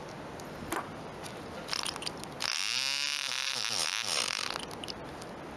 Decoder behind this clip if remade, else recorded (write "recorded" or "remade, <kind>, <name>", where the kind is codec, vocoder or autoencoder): recorded